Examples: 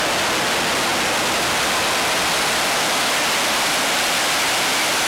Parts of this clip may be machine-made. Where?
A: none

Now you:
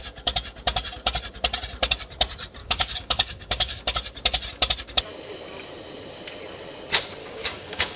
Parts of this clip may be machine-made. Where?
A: 2.6-3.8 (codec, DAC); 7.2-8.0

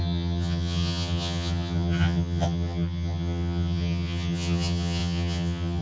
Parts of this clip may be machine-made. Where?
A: 0.0-5.8 (vocoder, HiFi-GAN)

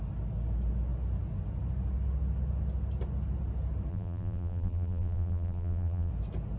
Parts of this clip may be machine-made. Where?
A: 3.9-6.1 (vocoder, BigVGAN v2)

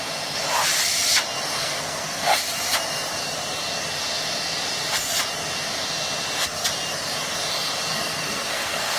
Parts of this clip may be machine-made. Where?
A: 1.6-2.4 (codec, SNAC); 7.9-9.0